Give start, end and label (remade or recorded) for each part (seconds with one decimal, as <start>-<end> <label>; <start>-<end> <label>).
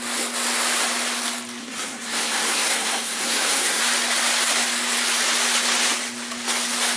0.0-1.6 recorded; 1.6-3.8 remade; 3.8-7.0 recorded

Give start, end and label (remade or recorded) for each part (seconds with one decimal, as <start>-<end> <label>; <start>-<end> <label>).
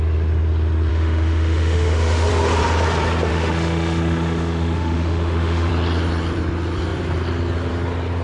0.0-0.9 recorded; 0.9-2.3 remade; 2.3-3.3 recorded; 3.3-5.7 remade; 5.7-8.2 recorded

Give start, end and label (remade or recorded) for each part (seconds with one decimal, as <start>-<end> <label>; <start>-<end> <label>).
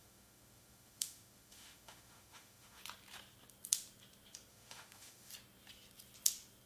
0.0-2.8 remade; 2.8-4.5 recorded; 4.5-5.3 remade; 5.3-6.7 recorded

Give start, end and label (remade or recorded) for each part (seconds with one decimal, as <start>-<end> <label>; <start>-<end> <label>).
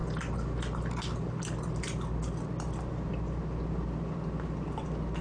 0.0-5.2 recorded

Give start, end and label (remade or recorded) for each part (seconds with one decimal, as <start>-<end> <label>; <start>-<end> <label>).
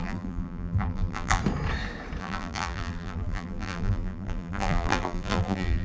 0.0-1.4 remade; 1.4-2.2 recorded; 2.2-5.8 remade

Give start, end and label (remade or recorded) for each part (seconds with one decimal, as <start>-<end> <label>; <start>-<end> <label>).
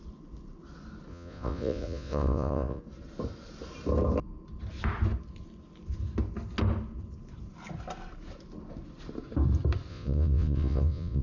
0.0-1.1 recorded; 1.1-2.8 remade; 2.8-9.9 recorded; 9.9-11.2 remade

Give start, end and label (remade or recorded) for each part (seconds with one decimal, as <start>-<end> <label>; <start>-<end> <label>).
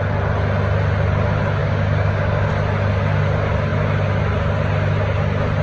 0.0-1.6 recorded; 1.6-2.5 remade; 2.5-5.6 recorded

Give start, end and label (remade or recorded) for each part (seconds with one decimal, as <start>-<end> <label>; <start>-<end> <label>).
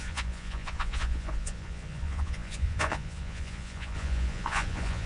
0.0-5.1 remade